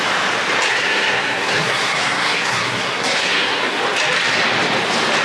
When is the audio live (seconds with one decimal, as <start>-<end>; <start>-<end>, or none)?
0.0-0.7; 3.8-5.2